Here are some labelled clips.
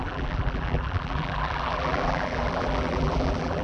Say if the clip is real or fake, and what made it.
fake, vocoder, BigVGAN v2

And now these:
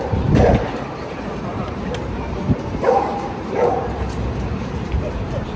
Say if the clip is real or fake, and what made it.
fake, vocoder, BigVGAN v2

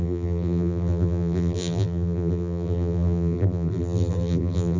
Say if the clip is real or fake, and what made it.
fake, vocoder, BigVGAN v2